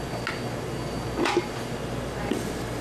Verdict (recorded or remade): recorded